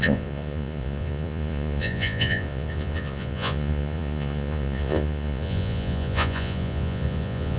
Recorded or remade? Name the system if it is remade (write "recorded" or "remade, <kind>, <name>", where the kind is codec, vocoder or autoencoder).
remade, vocoder, Vocos